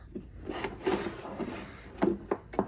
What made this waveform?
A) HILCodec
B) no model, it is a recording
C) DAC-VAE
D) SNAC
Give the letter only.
B